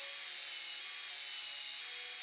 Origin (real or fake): real